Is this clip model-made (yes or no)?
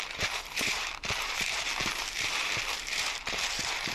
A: yes